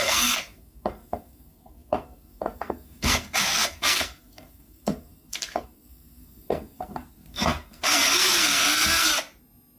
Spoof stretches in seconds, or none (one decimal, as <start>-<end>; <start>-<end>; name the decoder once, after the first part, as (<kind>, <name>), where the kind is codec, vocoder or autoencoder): 0.0-9.1 (codec, SNAC)